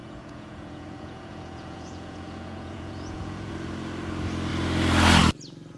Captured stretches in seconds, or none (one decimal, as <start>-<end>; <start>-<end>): 3.5-5.8